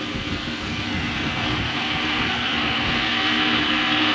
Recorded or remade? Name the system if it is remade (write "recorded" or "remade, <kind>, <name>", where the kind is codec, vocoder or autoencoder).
remade, codec, SNAC